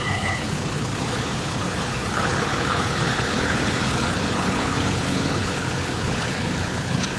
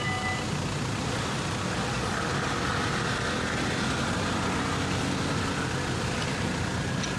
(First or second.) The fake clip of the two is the first